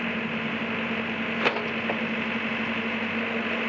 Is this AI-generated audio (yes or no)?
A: no